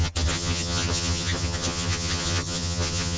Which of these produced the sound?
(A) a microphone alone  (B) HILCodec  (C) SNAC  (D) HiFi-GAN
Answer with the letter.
D